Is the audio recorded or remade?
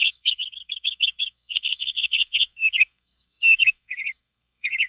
remade